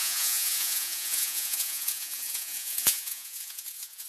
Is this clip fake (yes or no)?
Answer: yes